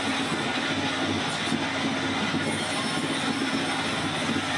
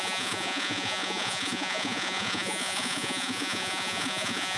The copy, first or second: second